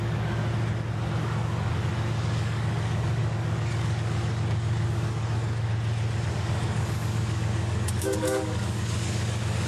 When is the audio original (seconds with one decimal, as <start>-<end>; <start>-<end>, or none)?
0.4-1.2; 5.7-6.3